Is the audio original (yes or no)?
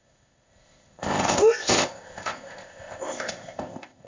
no